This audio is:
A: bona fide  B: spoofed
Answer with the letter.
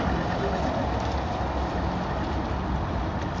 A